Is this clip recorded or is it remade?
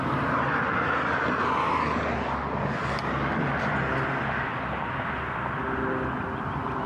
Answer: recorded